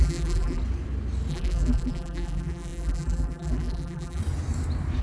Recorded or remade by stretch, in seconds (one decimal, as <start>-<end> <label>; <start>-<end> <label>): 0.0-0.6 remade; 0.6-1.3 recorded; 1.3-4.2 remade; 4.2-5.0 recorded